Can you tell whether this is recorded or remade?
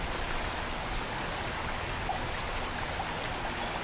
recorded